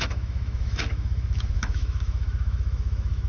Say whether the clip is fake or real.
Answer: fake